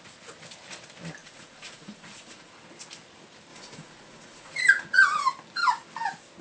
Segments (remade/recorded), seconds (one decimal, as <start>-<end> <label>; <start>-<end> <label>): 0.0-1.2 recorded; 1.2-2.5 remade; 2.5-3.5 recorded; 3.5-4.6 remade; 4.6-6.4 recorded